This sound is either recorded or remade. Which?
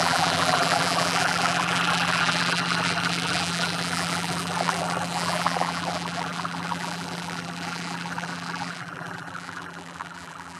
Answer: remade